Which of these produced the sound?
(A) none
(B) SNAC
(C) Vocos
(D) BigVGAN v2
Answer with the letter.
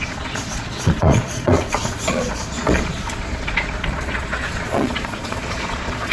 C